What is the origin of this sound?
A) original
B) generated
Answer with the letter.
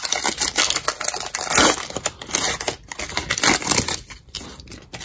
A